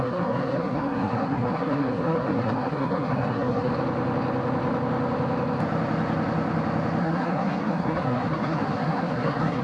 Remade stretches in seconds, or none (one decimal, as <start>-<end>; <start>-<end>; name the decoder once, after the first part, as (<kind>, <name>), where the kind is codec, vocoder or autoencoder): 0.0-3.7 (codec, SNAC); 7.0-9.6